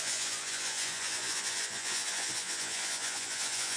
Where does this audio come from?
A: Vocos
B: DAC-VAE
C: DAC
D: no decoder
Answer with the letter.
A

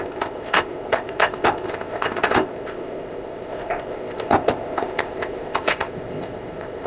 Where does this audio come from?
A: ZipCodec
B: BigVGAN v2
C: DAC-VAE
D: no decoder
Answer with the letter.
A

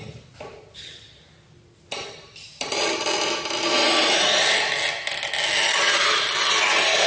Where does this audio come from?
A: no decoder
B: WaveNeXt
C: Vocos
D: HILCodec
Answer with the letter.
A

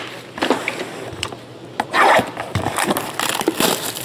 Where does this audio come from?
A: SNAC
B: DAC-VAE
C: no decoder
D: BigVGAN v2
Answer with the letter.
D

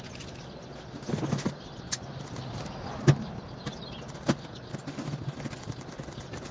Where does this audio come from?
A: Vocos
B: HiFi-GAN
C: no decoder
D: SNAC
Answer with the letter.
C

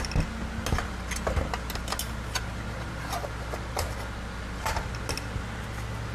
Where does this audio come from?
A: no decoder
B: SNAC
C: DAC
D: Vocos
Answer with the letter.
A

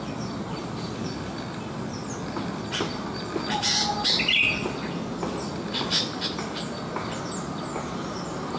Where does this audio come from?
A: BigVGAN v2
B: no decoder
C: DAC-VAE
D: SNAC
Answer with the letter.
B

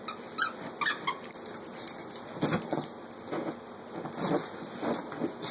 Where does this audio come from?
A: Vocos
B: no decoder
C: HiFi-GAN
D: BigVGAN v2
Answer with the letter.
B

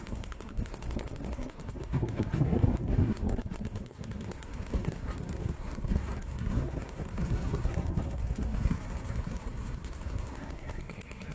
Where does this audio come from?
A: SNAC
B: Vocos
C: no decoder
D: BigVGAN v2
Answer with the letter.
A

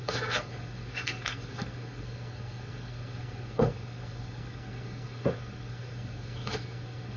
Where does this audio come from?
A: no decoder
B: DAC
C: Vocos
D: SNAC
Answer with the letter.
D